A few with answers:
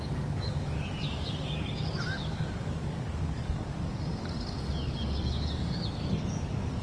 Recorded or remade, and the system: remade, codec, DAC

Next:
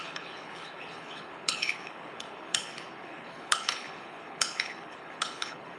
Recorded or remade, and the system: remade, codec, HILCodec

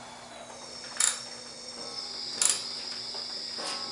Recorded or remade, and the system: recorded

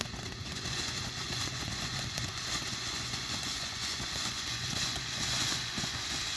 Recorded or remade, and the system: remade, vocoder, Vocos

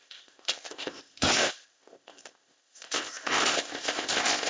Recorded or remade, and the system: remade, codec, ZipCodec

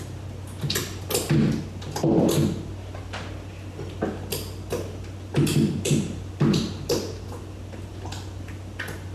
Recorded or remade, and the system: recorded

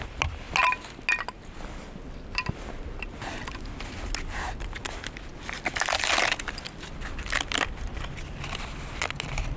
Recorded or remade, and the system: recorded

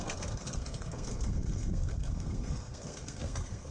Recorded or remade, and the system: remade, codec, SNAC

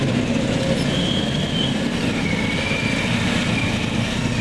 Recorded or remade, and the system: remade, vocoder, BigVGAN v2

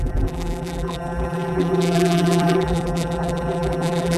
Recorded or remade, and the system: remade, vocoder, BigVGAN v2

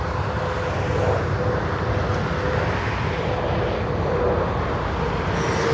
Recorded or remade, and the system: recorded